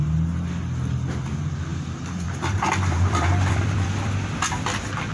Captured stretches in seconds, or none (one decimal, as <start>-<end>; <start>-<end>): 0.0-1.7